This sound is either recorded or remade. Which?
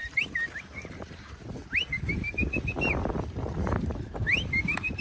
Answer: recorded